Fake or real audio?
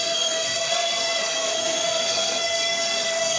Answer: fake